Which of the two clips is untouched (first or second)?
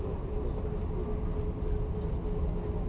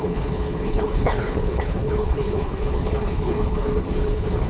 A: first